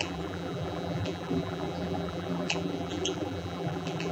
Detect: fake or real fake